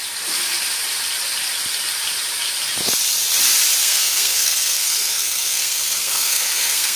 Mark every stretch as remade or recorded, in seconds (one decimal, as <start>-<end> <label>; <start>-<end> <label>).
0.0-3.8 recorded; 3.8-7.0 remade